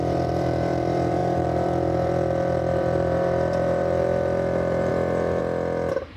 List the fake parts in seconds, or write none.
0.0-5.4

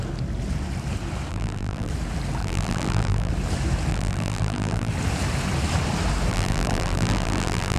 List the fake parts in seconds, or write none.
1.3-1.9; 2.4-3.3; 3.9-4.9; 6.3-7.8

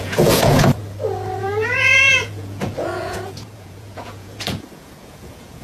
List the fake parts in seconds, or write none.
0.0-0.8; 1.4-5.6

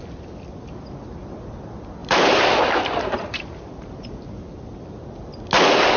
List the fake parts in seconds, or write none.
2.0-4.2

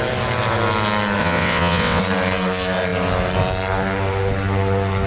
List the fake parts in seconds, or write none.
1.2-2.0

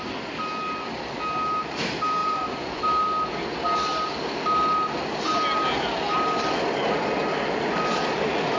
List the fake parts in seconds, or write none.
2.2-2.8